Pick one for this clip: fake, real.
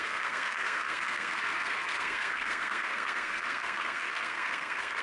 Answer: fake